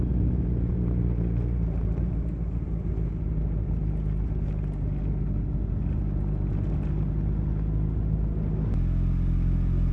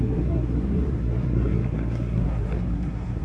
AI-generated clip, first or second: second